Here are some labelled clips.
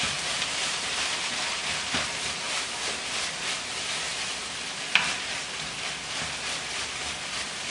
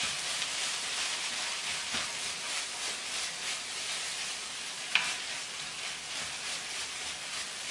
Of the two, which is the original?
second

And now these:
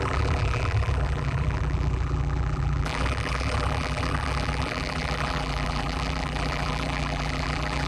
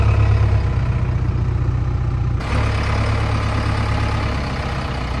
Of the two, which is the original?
second